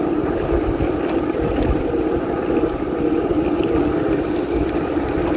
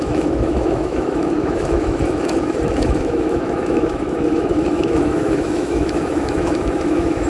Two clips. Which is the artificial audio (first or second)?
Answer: second